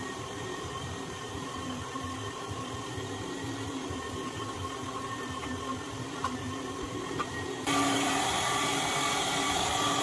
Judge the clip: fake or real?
fake